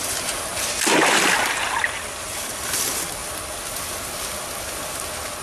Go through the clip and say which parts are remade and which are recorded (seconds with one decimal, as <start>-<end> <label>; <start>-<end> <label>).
0.0-5.4 recorded